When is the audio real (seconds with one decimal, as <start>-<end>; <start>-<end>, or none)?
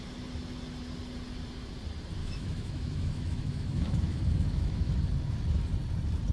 0.0-2.2; 4.9-6.3